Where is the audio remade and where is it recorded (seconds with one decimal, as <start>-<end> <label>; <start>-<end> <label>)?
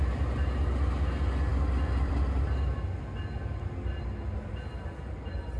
0.0-5.6 recorded